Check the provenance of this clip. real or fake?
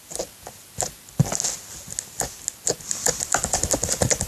real